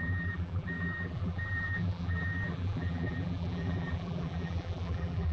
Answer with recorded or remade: remade